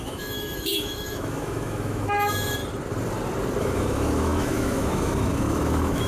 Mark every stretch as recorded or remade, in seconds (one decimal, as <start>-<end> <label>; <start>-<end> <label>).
0.0-2.6 remade; 2.6-3.6 recorded; 3.6-6.1 remade